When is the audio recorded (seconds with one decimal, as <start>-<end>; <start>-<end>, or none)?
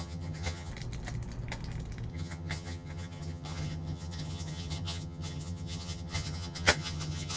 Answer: 0.7-2.1